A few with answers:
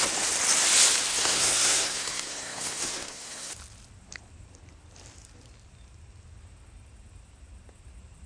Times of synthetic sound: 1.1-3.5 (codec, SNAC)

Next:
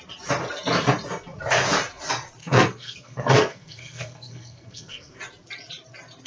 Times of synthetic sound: 2.4-5.2 (codec, SNAC)

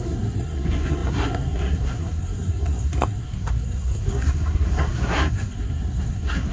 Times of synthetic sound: 0.0-6.5 (codec, SNAC)

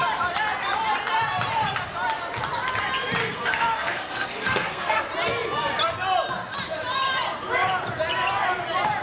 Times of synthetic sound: 3.2-5.0 (codec, SNAC)